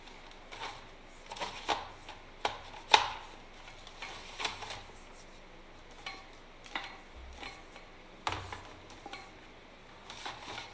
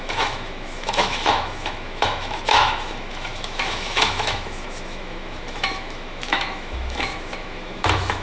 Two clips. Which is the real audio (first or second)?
first